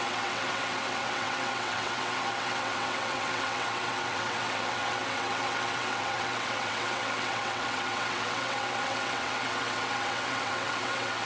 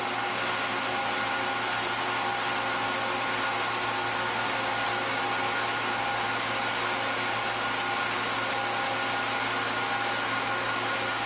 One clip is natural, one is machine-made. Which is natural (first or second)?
second